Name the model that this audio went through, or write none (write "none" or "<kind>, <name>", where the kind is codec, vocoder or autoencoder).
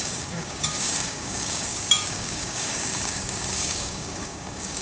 codec, DAC